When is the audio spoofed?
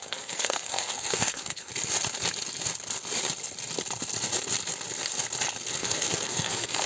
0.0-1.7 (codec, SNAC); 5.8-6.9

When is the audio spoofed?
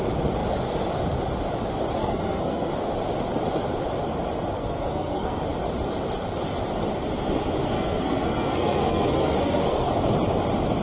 2.0-2.7 (codec, SNAC); 4.6-5.4; 7.6-9.9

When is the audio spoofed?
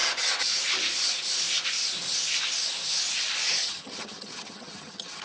3.6-5.2 (vocoder, HiFi-GAN)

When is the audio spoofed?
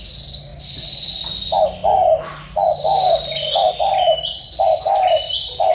none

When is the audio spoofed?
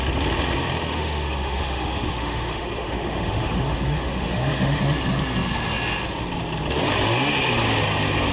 0.9-4.8 (autoencoder, DAC-VAE)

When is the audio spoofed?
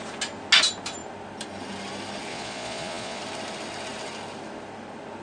2.3-3.2 (vocoder, Vocos)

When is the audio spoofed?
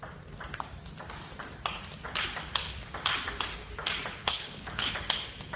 4.2-4.9 (codec, HILCodec)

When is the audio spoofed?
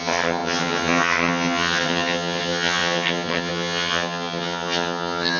0.0-5.4 (vocoder, HiFi-GAN)